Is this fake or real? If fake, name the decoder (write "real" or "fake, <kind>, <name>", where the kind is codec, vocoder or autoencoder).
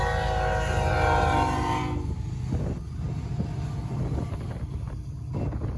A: real